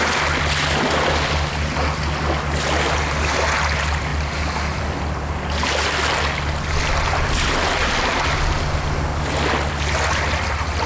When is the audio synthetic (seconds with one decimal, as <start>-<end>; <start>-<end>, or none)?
none